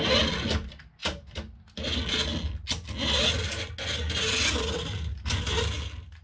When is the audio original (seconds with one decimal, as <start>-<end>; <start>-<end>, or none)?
0.0-6.2